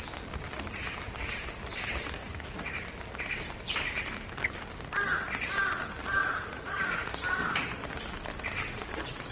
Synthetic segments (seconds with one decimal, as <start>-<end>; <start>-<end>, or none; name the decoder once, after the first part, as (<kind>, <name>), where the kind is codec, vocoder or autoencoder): 2.2-2.7 (vocoder, Vocos); 6.2-7.1